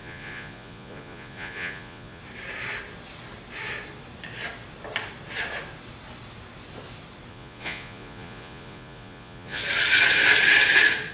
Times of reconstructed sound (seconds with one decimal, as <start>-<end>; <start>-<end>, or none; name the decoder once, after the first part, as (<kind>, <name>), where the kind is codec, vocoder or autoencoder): 0.0-2.2 (vocoder, Vocos); 7.3-9.6